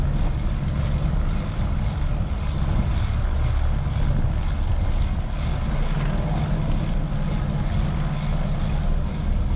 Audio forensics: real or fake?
real